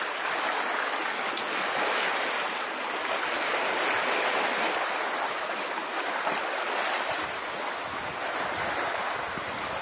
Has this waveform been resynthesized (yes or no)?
no